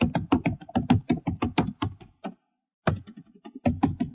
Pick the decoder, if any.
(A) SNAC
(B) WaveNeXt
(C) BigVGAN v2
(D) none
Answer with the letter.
D